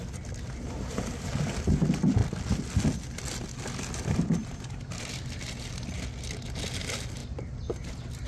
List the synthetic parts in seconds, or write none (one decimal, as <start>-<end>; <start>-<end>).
4.4-5.0; 7.2-7.9